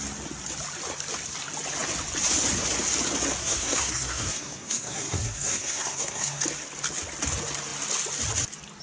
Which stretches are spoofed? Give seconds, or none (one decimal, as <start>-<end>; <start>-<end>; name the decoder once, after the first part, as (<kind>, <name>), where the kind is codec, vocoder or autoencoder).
3.4-6.4 (codec, SNAC)